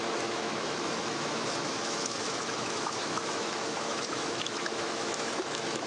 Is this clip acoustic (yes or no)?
no